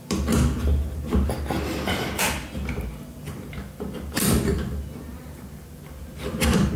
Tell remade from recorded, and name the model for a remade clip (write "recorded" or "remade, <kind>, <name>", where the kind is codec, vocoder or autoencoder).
remade, vocoder, BigVGAN v2